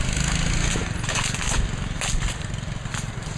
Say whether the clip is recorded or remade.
recorded